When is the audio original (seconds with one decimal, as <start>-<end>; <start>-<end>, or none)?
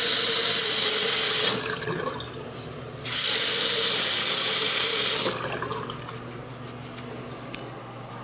0.0-0.6; 5.2-8.2